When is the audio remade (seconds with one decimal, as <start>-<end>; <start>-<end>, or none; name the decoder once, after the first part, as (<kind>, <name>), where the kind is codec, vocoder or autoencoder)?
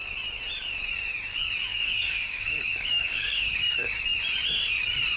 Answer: 1.7-4.0 (codec, DAC)